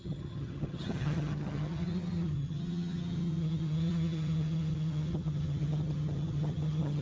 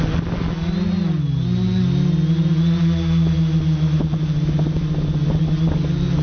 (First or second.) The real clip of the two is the second